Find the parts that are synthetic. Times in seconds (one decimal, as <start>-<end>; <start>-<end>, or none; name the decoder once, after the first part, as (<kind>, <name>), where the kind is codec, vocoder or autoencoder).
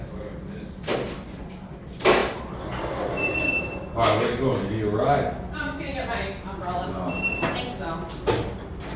none